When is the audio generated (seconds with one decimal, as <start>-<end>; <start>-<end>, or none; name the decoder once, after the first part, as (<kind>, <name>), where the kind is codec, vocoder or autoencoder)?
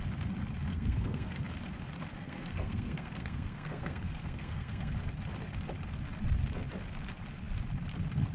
0.7-1.4 (codec, SNAC); 2.1-4.9